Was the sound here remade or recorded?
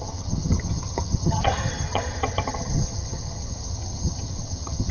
remade